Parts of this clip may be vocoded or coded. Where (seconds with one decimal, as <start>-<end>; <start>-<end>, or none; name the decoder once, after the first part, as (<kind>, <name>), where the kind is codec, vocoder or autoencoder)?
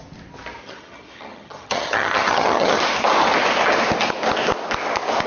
0.6-2.8 (vocoder, HiFi-GAN)